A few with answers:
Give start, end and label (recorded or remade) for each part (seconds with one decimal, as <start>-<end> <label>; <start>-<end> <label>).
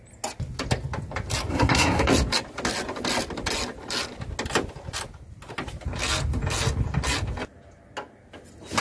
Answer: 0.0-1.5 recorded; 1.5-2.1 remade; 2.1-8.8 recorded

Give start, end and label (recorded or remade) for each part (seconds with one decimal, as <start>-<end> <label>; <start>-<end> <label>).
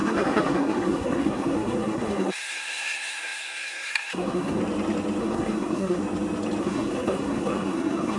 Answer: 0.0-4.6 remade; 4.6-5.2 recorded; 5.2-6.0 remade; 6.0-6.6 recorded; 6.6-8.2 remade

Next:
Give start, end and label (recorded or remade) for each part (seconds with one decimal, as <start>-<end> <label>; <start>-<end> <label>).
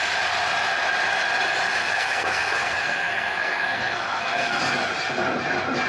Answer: 0.0-1.8 recorded; 1.8-4.6 remade; 4.6-5.9 recorded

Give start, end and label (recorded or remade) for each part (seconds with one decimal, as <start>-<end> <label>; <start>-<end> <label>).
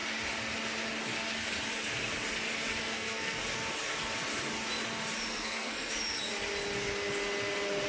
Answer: 0.0-2.8 recorded; 2.8-3.4 remade; 3.4-5.3 recorded; 5.3-5.9 remade; 5.9-7.9 recorded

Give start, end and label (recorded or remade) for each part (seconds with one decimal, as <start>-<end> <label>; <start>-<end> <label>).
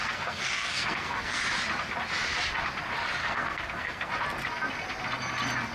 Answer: 0.0-1.4 remade; 1.4-3.2 recorded; 3.2-4.1 remade; 4.1-5.7 recorded